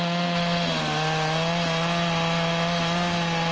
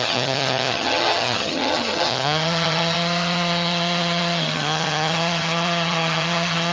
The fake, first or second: second